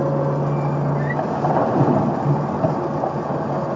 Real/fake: real